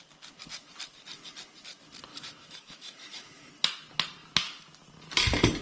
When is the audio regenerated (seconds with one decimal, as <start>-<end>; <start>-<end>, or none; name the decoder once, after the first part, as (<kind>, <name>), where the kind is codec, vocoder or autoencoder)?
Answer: 2.1-3.5 (autoencoder, DAC-VAE)